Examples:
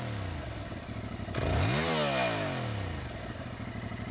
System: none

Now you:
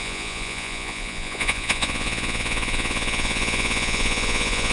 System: vocoder, Vocos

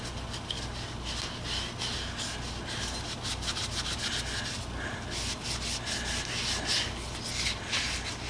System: none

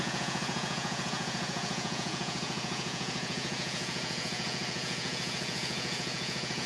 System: vocoder, Vocos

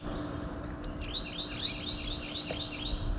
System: none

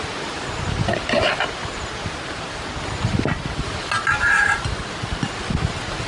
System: none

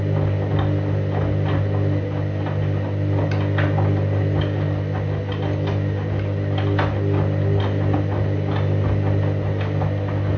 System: none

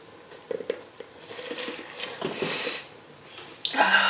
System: none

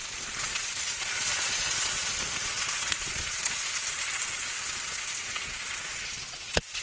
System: vocoder, Vocos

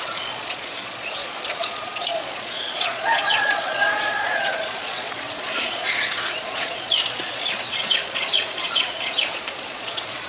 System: vocoder, Vocos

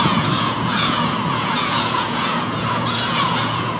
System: vocoder, Vocos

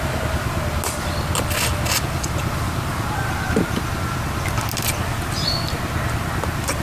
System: none